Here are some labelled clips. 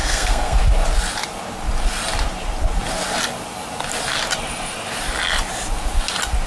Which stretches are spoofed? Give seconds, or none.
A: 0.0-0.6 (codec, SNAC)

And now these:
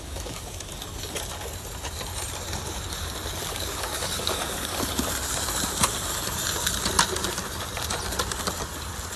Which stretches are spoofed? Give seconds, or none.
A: 0.0-0.7 (codec, DAC); 3.5-4.7

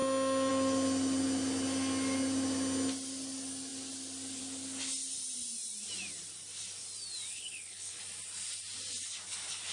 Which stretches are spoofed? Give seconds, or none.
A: 7.3-8.0 (codec, HILCodec)